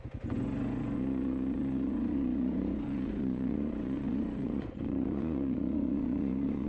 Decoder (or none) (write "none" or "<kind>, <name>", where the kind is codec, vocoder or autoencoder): vocoder, Vocos